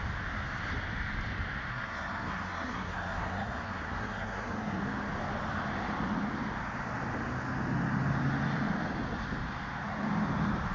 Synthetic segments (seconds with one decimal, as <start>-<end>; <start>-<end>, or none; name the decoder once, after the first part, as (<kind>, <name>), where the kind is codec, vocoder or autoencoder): 1.7-4.8 (codec, SNAC)